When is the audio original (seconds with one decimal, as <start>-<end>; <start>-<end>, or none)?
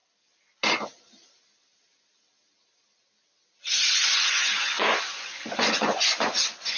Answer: 0.0-4.1